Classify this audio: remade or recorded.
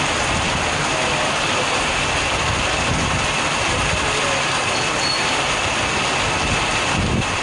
recorded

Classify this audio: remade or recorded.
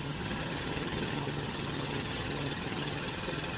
remade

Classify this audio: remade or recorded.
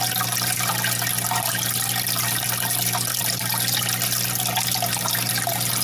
recorded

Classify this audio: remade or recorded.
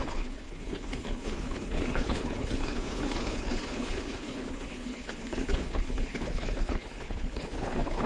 remade